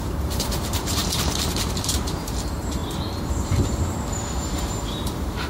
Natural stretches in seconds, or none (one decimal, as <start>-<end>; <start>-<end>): 1.0-1.8